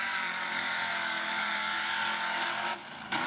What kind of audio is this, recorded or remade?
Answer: remade